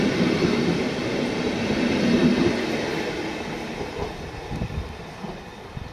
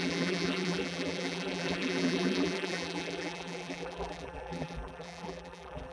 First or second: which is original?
first